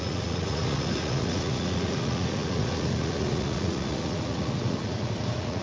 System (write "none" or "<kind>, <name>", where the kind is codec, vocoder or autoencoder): vocoder, Vocos